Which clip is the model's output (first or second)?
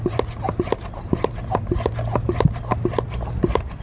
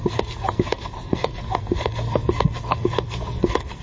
second